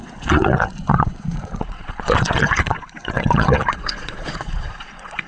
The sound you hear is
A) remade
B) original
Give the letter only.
A